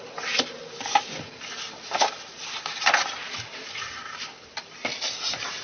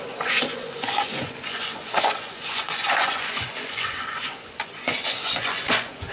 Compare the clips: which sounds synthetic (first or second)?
second